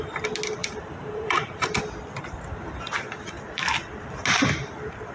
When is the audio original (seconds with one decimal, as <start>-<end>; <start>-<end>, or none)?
0.0-0.6; 1.8-5.1